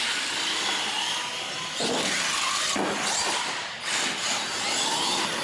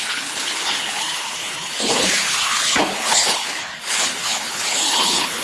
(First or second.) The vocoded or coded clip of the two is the second